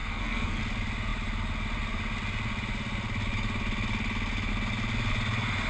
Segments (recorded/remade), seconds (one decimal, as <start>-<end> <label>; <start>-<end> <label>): 0.0-0.6 remade; 0.6-5.7 recorded